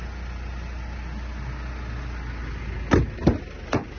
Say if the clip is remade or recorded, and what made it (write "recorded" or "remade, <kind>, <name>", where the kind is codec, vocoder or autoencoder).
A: recorded